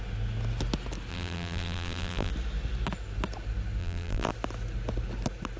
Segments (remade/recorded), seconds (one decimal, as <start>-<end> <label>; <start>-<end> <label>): 0.0-1.1 recorded; 1.1-2.3 remade; 2.3-3.8 recorded; 3.8-4.3 remade; 4.3-5.6 recorded